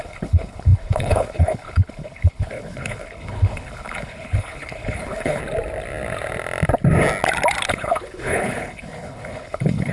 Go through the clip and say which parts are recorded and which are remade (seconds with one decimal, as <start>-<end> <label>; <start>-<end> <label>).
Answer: 0.0-5.4 remade; 5.4-7.7 recorded; 7.7-9.9 remade